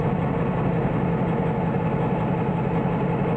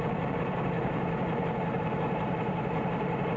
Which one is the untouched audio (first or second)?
first